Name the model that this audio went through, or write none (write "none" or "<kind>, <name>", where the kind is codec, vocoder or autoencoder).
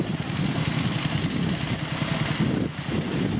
none